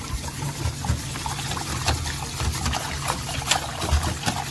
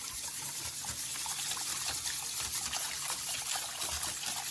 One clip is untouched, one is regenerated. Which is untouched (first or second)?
first